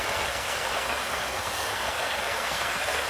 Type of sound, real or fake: fake